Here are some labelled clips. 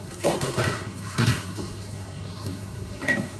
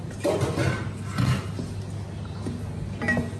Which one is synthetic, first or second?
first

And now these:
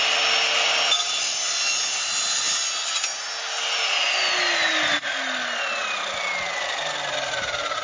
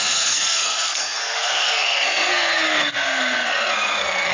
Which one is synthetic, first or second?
second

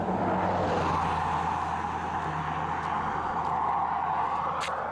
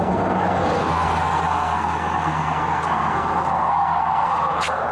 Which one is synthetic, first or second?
second